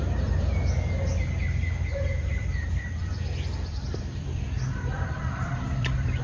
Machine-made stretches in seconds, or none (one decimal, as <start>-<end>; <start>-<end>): 0.0-0.5; 1.9-6.2